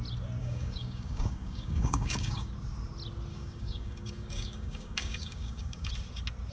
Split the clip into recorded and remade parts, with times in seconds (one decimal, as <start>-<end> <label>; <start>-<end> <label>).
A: 0.0-0.4 recorded; 0.4-2.5 remade; 2.5-3.3 recorded; 3.3-5.9 remade; 5.9-6.5 recorded